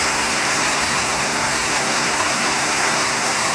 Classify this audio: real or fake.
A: fake